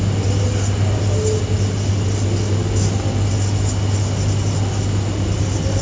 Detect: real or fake real